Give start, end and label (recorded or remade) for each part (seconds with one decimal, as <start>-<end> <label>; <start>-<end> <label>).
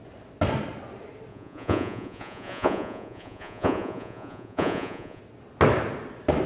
0.0-1.3 recorded; 1.3-5.2 remade; 5.2-6.5 recorded